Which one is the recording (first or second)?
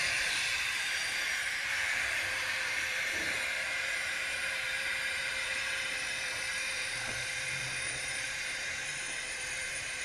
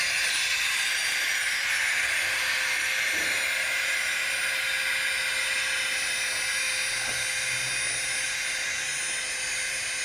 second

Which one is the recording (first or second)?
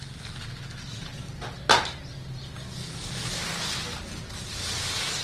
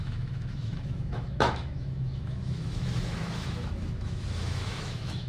first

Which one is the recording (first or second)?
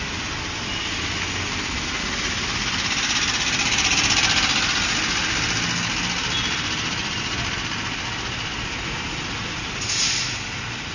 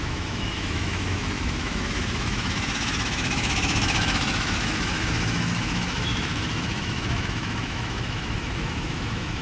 first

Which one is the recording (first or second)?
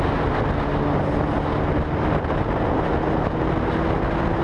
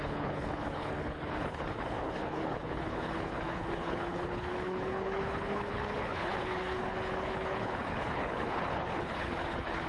first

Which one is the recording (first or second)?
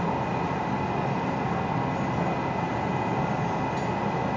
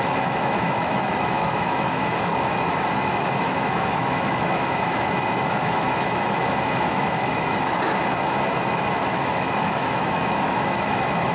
first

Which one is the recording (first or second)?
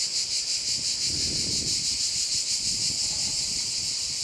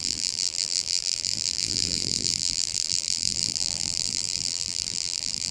first